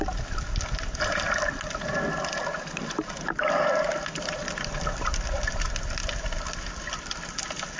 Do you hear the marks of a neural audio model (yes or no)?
no